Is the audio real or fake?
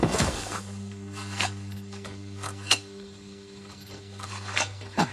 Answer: fake